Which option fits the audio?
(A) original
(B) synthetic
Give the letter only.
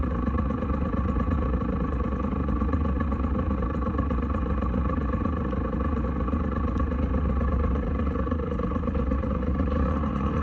B